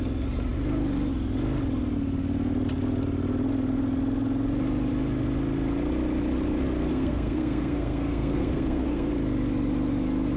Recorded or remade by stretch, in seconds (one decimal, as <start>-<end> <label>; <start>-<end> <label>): 0.0-6.9 recorded; 6.9-9.1 remade; 9.1-10.4 recorded